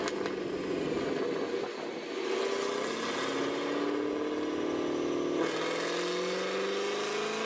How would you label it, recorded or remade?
recorded